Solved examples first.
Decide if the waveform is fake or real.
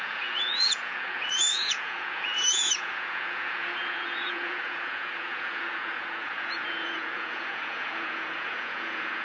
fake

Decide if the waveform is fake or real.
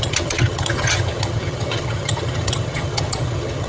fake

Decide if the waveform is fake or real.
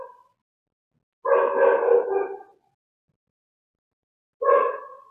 real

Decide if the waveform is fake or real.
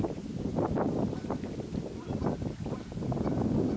real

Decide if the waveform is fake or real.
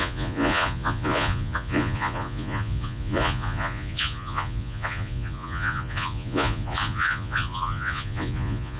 fake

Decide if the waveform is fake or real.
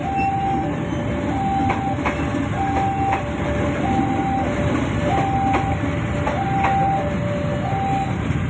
real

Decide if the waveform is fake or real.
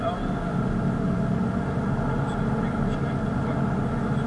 real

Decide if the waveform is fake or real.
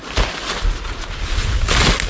real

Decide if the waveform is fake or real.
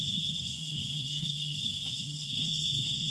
fake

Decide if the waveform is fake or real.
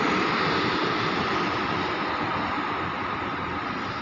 real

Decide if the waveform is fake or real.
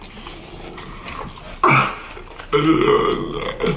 real